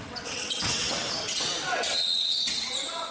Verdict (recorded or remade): remade